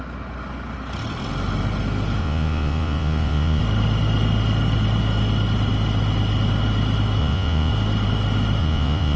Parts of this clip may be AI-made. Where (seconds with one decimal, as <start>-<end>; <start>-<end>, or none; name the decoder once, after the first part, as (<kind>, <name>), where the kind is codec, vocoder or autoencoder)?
2.2-3.6 (vocoder, Vocos); 7.2-7.7; 8.6-9.2